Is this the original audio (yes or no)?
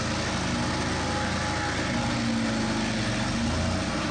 yes